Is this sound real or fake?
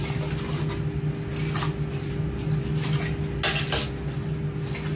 real